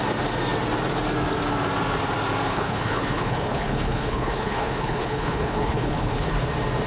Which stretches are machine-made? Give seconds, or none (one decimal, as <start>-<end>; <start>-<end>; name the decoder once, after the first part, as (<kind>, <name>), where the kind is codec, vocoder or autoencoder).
2.5-6.3 (codec, HILCodec)